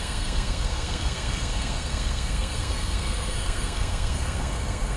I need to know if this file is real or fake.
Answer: fake